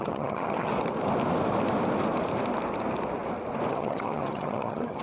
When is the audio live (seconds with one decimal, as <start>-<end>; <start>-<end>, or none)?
0.7-3.7